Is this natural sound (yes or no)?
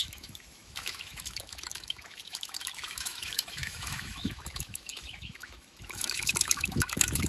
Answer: no